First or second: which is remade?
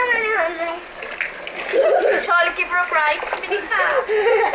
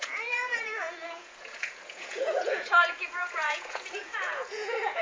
second